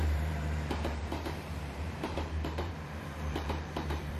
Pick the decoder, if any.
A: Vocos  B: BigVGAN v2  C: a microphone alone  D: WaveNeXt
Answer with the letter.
B